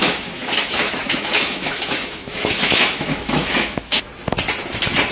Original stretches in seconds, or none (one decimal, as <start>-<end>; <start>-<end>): 4.1-5.1

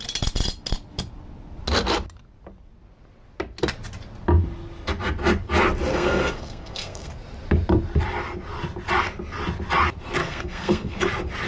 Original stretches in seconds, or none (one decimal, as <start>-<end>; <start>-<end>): 0.0-5.9; 7.1-10.2; 11.1-11.5

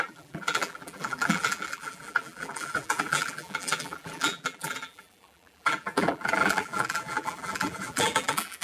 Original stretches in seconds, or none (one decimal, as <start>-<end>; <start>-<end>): none

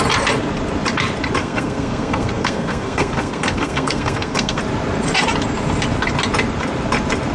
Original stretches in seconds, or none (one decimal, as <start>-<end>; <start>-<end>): 0.0-1.4; 4.6-7.3

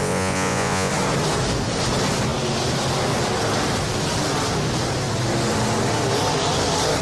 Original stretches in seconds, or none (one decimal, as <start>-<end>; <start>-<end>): 0.9-7.0